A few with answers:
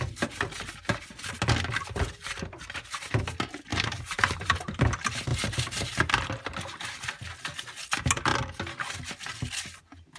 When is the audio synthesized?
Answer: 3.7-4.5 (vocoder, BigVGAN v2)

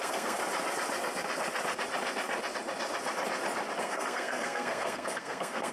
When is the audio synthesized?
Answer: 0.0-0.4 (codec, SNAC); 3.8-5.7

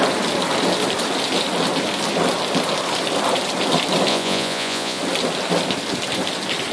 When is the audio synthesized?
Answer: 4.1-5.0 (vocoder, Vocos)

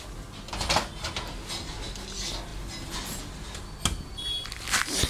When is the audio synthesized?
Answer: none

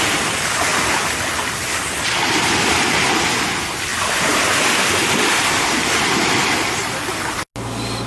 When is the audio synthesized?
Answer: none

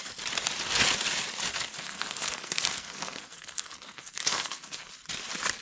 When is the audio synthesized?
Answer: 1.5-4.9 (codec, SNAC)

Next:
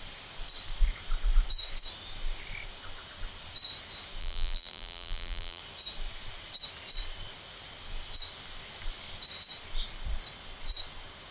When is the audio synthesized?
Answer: 4.2-5.6 (vocoder, BigVGAN v2)

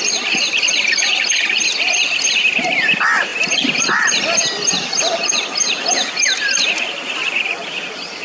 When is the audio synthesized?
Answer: none